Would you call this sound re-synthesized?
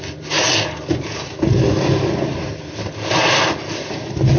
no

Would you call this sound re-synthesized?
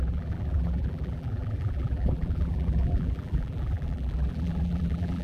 yes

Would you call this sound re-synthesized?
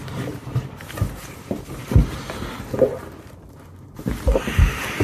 yes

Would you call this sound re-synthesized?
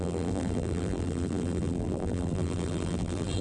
yes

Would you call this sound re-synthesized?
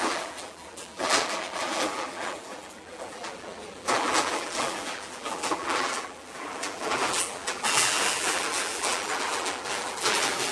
yes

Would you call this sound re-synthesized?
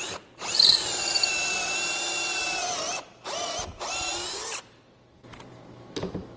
yes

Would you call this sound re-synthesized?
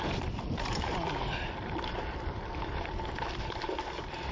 yes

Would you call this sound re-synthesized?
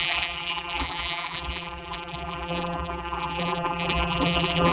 yes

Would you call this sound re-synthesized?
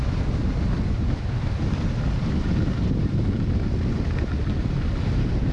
no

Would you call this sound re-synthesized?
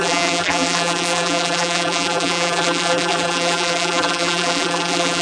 yes